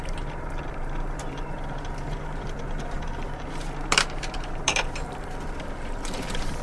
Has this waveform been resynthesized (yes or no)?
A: yes